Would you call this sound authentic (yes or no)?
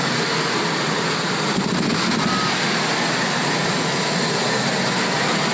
yes